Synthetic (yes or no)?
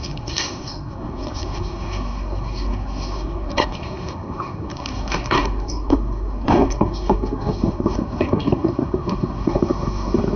yes